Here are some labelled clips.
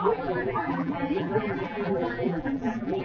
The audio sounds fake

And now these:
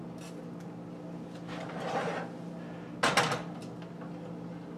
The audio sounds real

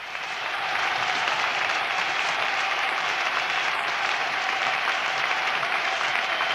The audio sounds fake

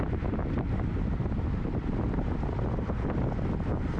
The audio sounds real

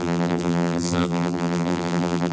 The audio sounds fake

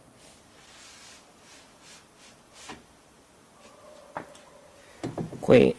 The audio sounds real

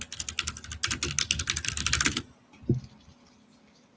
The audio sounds real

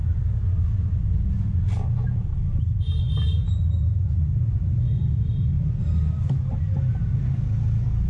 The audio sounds fake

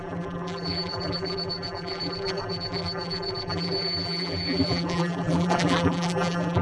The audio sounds fake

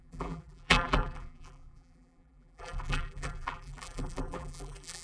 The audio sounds fake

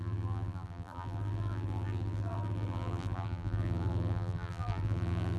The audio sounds fake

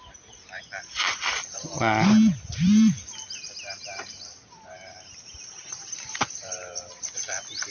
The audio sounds fake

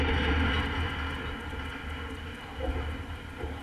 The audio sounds real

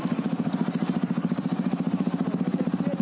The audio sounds fake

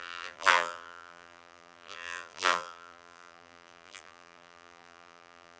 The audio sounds fake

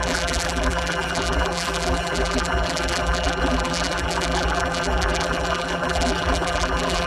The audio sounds fake